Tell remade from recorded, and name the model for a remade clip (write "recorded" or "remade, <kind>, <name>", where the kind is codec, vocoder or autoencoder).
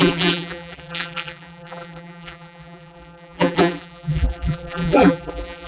remade, vocoder, BigVGAN v2